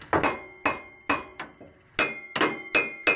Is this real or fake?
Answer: real